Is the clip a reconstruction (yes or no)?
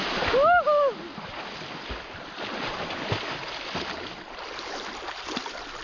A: no